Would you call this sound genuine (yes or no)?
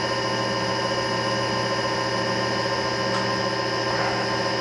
yes